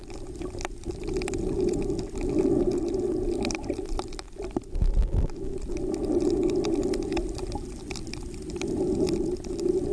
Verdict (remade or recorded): remade